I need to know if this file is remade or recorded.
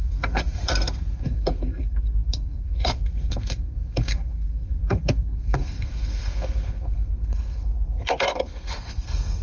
remade